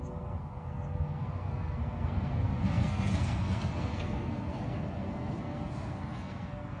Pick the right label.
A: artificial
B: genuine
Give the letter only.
A